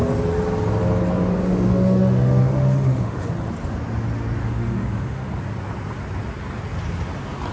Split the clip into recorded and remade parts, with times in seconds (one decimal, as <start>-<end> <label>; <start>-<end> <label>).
0.0-1.4 recorded; 1.4-3.3 remade; 3.3-4.4 recorded; 4.4-5.3 remade; 5.3-7.5 recorded